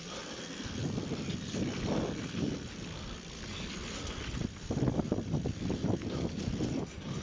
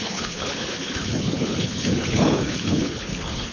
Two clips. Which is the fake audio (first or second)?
second